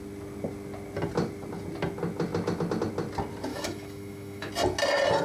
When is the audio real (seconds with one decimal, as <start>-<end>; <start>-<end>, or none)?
0.0-3.5; 4.5-5.2